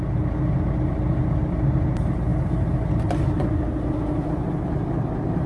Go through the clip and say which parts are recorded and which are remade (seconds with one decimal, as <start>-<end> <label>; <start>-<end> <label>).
0.0-5.5 recorded